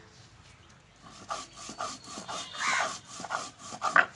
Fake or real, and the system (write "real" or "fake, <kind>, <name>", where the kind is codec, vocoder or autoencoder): real